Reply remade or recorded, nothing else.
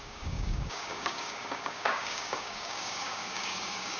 remade